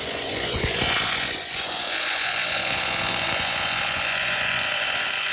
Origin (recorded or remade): remade